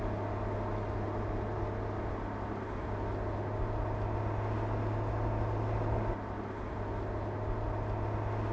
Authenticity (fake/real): real